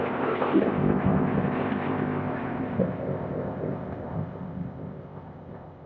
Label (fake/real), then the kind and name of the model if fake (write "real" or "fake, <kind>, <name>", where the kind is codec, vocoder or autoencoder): fake, codec, ZipCodec